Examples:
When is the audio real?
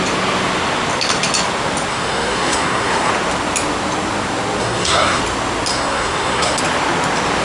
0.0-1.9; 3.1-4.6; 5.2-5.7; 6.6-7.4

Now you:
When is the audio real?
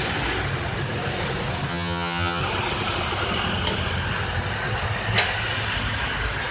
0.0-1.7; 2.4-6.5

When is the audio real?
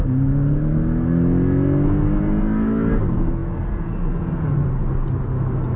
0.0-5.8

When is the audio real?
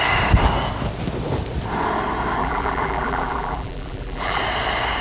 0.0-2.4; 4.4-5.0